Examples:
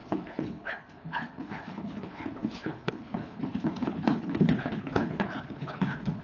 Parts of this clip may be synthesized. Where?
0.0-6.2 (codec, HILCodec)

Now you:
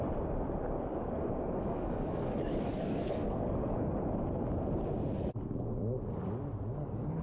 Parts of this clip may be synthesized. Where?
0.9-3.9 (codec, DAC)

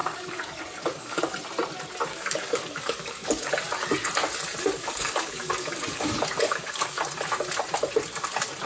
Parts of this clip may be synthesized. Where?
0.0-1.3 (codec, DAC); 2.1-3.5; 4.8-7.0

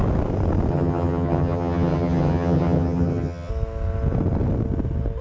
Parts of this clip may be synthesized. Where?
0.7-3.5 (vocoder, HiFi-GAN)

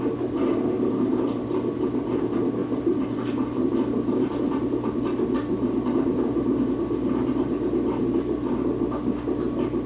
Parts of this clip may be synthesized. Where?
none

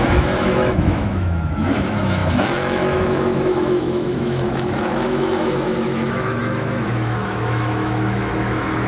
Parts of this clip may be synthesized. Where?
0.0-8.9 (autoencoder, DAC-VAE)